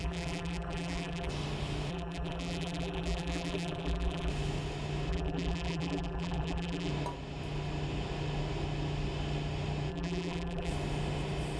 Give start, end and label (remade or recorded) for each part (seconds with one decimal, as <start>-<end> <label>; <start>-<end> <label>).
0.0-1.3 remade; 1.3-1.9 recorded; 1.9-4.3 remade; 4.3-5.1 recorded; 5.1-6.9 remade; 6.9-9.9 recorded; 9.9-10.7 remade; 10.7-11.6 recorded